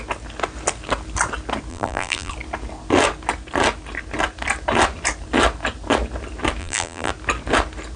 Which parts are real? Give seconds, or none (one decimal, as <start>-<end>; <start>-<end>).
0.0-1.7; 2.3-6.6; 7.1-8.0